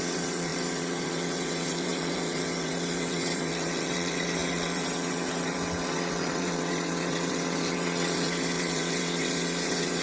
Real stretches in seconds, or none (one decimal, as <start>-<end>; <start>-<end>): none